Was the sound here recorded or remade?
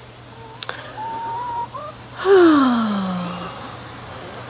recorded